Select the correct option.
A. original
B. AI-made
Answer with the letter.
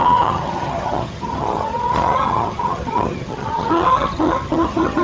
B